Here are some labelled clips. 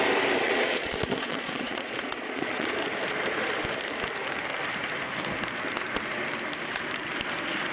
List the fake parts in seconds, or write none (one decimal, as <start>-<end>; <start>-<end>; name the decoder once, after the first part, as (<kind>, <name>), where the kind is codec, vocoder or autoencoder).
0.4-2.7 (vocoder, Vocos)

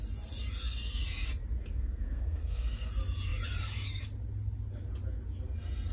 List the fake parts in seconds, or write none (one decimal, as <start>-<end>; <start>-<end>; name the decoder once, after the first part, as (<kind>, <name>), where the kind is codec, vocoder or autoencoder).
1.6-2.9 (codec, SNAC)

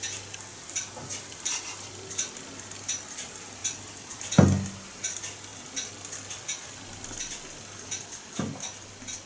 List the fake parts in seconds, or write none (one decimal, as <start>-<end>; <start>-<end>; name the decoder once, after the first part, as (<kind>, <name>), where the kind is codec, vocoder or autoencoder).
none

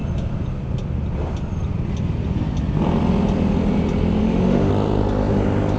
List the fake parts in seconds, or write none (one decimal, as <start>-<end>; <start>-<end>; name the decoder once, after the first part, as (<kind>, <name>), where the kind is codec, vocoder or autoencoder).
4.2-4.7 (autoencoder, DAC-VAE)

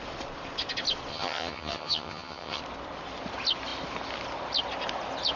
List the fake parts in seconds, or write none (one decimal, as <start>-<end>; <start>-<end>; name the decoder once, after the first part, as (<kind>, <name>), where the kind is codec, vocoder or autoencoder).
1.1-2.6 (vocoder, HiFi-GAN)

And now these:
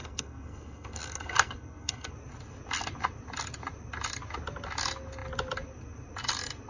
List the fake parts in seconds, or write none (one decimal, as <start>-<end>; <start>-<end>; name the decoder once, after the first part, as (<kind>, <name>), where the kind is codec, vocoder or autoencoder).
0.0-2.1 (codec, SNAC)

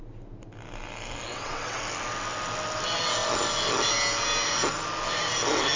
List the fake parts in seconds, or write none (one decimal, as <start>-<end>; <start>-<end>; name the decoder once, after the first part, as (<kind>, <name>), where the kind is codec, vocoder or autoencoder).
1.3-1.8 (vocoder, WaveNeXt)

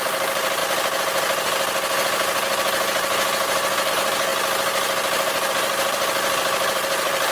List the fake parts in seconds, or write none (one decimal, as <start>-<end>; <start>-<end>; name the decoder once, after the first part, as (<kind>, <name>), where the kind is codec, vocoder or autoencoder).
0.0-0.6 (vocoder, BigVGAN v2); 3.9-4.3; 5.5-7.3